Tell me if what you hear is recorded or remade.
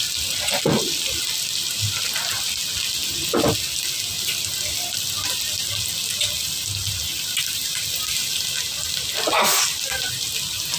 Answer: recorded